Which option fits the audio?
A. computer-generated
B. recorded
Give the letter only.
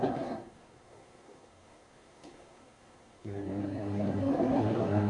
A